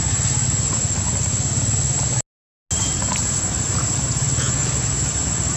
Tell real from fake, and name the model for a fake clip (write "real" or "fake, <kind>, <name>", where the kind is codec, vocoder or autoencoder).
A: real